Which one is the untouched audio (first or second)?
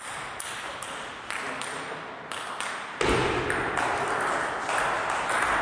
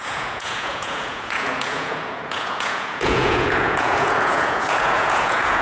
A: first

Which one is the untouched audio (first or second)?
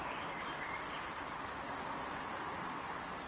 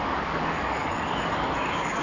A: first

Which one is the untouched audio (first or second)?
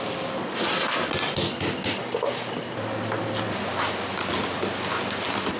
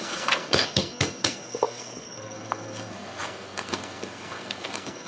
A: first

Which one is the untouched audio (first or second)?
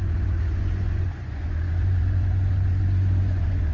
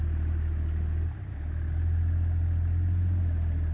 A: second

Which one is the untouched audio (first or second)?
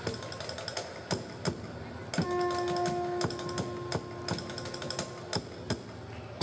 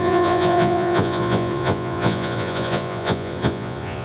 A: first